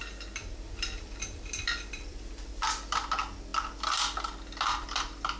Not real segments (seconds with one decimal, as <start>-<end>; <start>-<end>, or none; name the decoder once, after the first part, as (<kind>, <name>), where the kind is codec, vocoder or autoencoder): 0.0-2.5 (vocoder, BigVGAN v2)

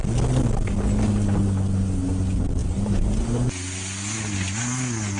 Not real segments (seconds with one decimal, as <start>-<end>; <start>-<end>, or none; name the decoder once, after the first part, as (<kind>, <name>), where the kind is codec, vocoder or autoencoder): 2.6-3.2 (vocoder, BigVGAN v2)

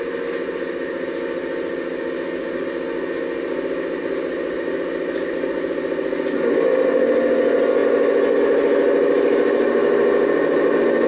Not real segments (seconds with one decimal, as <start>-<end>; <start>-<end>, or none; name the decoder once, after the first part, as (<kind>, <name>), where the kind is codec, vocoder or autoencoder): none

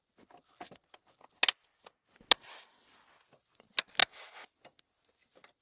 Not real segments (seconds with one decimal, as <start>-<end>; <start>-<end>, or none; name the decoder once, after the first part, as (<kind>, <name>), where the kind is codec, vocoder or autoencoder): 4.0-4.5 (autoencoder, DAC-VAE)

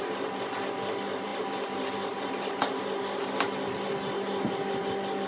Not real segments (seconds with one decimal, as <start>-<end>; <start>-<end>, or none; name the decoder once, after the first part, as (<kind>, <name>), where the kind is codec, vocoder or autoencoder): none

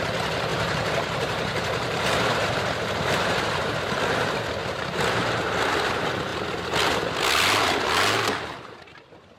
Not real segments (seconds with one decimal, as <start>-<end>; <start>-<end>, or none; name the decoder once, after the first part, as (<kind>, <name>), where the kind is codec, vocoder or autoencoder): 0.5-4.0 (vocoder, BigVGAN v2); 4.6-5.4

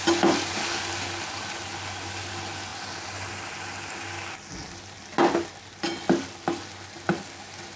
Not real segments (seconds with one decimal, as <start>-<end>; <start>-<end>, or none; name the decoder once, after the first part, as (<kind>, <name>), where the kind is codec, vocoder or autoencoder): none